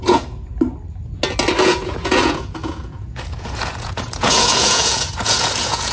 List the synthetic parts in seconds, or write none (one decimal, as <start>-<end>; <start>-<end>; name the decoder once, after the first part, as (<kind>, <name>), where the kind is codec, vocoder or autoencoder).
0.0-0.5 (vocoder, Vocos); 1.6-5.9